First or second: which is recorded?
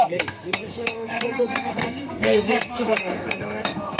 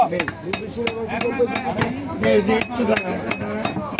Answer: second